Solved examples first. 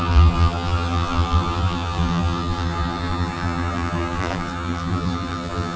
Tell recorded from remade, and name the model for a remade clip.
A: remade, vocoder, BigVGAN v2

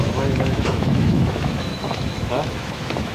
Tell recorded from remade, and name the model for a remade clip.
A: remade, autoencoder, DAC-VAE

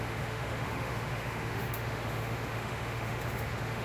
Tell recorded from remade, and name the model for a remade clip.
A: remade, autoencoder, DAC-VAE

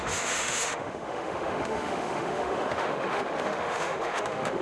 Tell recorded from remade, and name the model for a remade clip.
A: remade, autoencoder, DAC-VAE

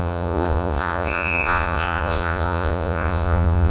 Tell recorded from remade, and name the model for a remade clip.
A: remade, vocoder, Vocos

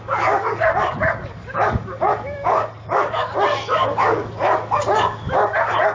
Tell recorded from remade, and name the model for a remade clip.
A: remade, codec, DAC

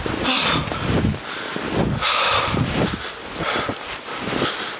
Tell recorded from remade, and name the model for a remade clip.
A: recorded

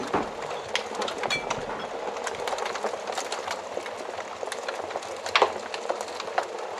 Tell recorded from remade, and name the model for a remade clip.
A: recorded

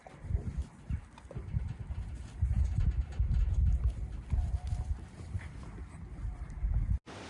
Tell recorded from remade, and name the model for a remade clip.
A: recorded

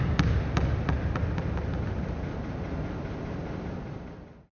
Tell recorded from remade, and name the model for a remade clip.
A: recorded